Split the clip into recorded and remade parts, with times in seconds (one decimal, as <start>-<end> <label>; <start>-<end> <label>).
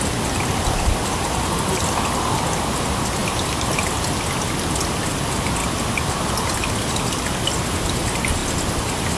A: 0.0-9.2 recorded